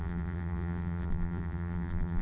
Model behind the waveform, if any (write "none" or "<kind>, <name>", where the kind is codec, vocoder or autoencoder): vocoder, BigVGAN v2